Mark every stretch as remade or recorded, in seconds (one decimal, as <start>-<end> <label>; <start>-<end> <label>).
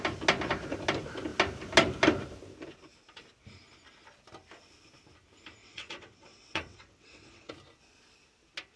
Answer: 0.0-5.6 recorded; 5.6-7.5 remade; 7.5-8.8 recorded